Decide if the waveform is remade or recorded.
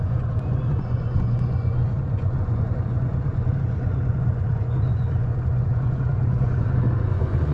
remade